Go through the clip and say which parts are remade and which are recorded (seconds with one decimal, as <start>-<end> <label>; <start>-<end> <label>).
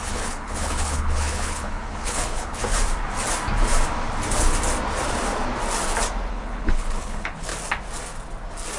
0.0-2.6 remade; 2.6-6.3 recorded; 6.3-7.5 remade; 7.5-8.8 recorded